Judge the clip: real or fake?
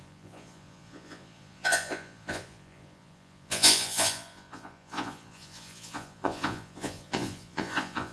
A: fake